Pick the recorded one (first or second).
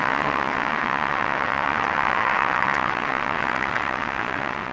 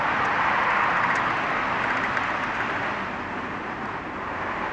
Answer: second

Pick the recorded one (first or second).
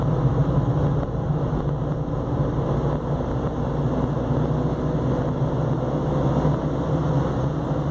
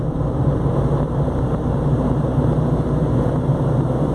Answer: first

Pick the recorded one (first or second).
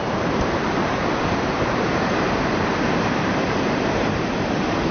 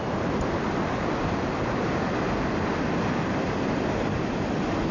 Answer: second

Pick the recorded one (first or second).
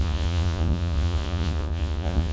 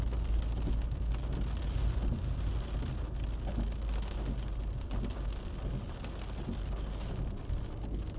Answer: second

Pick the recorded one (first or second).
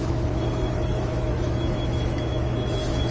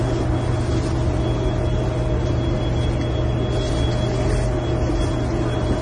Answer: second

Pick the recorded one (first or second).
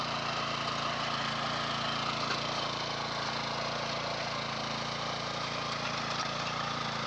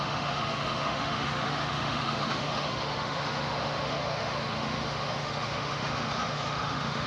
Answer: first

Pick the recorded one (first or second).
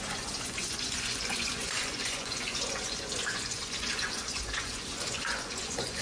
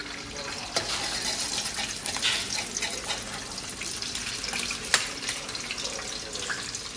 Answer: second